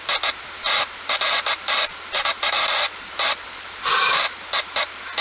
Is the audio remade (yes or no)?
no